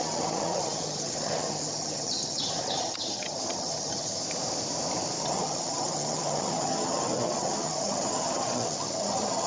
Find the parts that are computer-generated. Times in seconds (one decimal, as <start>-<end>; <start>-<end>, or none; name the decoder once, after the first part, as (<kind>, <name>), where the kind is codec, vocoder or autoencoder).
0.0-4.2 (vocoder, HiFi-GAN); 5.2-9.5